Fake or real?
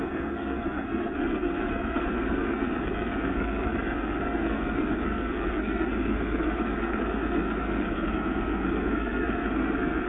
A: fake